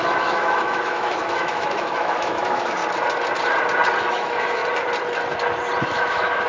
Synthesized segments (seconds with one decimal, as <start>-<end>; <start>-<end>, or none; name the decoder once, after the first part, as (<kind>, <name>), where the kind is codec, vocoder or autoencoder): 0.0-2.8 (autoencoder, DAC-VAE); 4.0-4.6; 5.8-6.5